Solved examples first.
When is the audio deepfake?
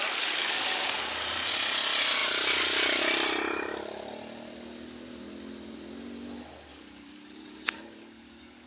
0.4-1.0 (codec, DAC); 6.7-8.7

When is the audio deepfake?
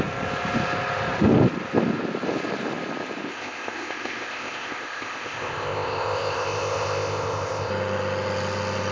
3.3-7.7 (codec, ZipCodec)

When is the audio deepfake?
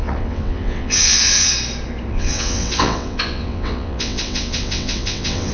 0.0-1.5 (vocoder, WaveNeXt); 2.1-5.5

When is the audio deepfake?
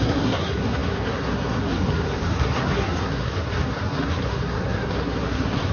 0.0-5.7 (codec, SNAC)